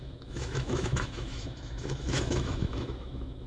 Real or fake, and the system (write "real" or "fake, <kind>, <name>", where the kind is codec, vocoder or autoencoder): fake, autoencoder, DAC-VAE